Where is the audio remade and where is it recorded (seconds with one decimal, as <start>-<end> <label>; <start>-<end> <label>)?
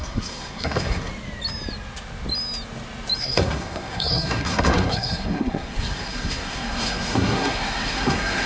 0.0-1.1 remade; 1.1-3.2 recorded; 3.2-8.5 remade